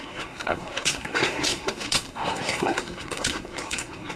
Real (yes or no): no